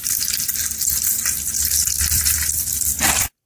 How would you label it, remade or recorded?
remade